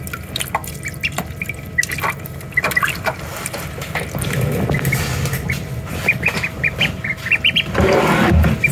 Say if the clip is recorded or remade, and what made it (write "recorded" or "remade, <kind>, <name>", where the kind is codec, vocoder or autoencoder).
recorded